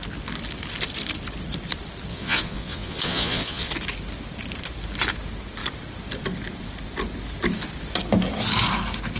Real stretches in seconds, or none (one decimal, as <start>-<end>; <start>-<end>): 0.0-2.1; 3.7-9.2